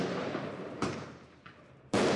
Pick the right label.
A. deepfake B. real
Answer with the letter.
A